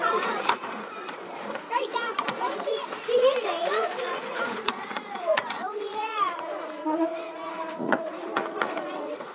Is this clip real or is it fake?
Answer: fake